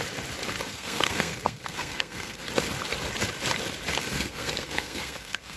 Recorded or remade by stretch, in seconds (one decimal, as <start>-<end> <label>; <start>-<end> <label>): 0.0-0.7 recorded; 0.7-2.5 remade; 2.5-4.0 recorded; 4.0-5.6 remade